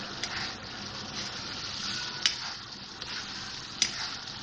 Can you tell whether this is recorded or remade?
recorded